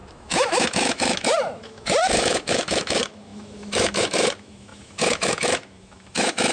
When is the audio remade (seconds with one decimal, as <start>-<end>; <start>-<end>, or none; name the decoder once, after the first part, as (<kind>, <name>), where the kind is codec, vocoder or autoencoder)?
0.0-6.5 (autoencoder, DAC-VAE)